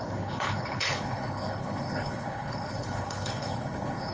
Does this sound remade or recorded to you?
remade